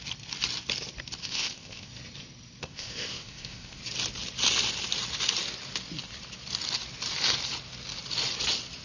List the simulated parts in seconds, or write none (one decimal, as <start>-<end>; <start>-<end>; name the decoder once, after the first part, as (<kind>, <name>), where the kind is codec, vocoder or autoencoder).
1.2-1.9 (codec, ZipCodec); 2.6-3.8